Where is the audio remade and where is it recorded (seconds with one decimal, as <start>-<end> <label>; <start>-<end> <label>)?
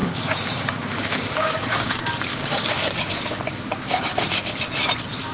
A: 0.0-1.9 remade; 1.9-2.3 recorded; 2.3-4.6 remade; 4.6-5.3 recorded